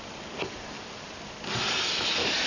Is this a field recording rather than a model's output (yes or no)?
yes